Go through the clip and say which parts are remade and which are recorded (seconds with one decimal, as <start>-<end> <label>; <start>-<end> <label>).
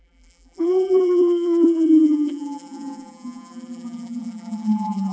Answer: 0.0-5.1 remade